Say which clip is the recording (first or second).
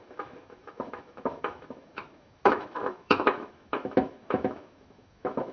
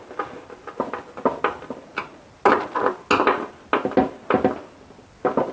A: second